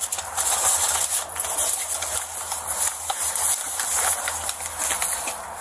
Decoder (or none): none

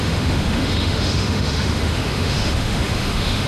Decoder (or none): autoencoder, DAC-VAE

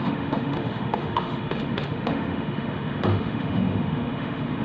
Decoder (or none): autoencoder, DAC-VAE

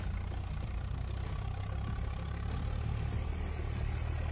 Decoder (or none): none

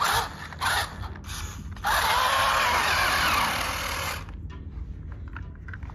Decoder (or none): none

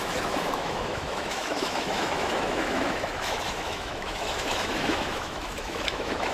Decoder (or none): autoencoder, DAC-VAE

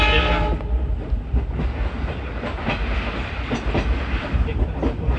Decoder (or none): none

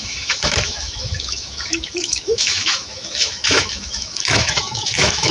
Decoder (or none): autoencoder, DAC-VAE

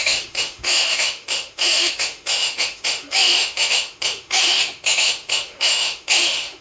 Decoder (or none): autoencoder, DAC-VAE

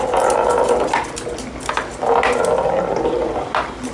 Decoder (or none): none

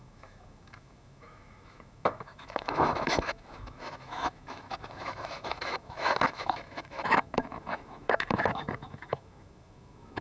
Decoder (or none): autoencoder, DAC-VAE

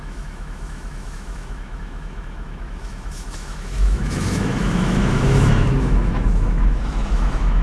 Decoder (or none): autoencoder, DAC-VAE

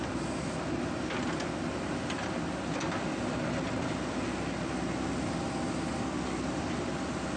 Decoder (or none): none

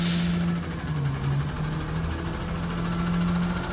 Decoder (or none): none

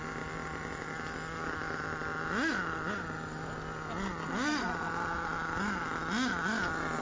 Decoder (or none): none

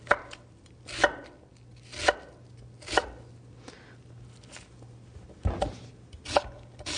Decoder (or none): none